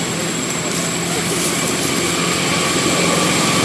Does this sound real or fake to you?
real